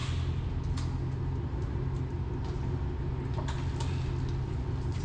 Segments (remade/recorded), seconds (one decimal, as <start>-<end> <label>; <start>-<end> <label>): 0.0-5.0 recorded